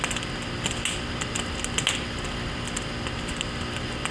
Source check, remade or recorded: recorded